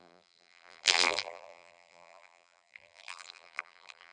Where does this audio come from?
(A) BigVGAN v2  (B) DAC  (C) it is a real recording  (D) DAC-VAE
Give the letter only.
A